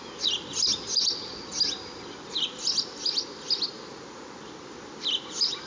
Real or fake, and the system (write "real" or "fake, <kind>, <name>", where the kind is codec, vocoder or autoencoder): real